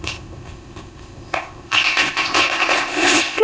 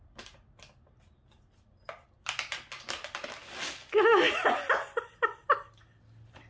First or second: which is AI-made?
first